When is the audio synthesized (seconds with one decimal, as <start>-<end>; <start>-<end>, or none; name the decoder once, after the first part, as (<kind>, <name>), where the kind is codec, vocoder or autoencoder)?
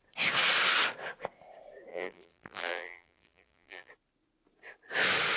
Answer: 1.9-3.9 (vocoder, BigVGAN v2)